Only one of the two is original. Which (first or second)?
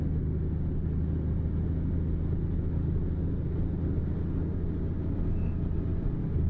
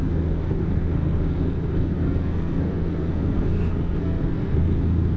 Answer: first